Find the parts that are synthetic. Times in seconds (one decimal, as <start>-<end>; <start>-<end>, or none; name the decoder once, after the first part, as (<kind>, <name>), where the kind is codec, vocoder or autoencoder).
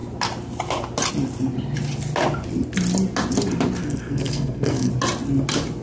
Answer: 3.8-4.9 (codec, SNAC)